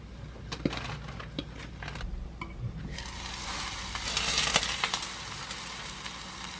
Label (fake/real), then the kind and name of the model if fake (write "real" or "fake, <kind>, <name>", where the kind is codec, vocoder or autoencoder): real